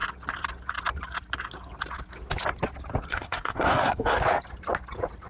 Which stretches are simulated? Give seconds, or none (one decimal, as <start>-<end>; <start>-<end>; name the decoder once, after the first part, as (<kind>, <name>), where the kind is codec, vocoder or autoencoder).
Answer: 3.1-4.2 (codec, SNAC)